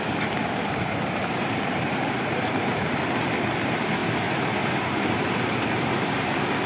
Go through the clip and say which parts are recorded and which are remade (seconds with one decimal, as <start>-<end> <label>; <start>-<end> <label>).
0.0-0.4 recorded; 0.4-3.0 remade; 3.0-4.0 recorded; 4.0-6.3 remade; 6.3-6.7 recorded